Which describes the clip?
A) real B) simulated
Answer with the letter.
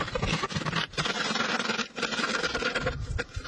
A